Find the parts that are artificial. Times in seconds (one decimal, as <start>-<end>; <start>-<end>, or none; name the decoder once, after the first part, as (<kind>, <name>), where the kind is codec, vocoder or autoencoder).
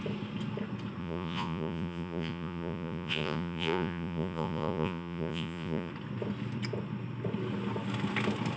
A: 1.0-5.9 (vocoder, Vocos)